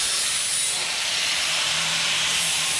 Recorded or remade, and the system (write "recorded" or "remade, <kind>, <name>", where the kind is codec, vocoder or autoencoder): remade, vocoder, BigVGAN v2